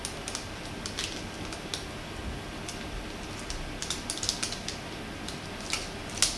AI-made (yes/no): no